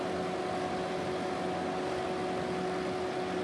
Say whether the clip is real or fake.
real